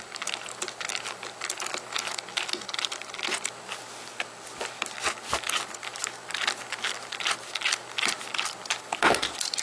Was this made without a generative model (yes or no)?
yes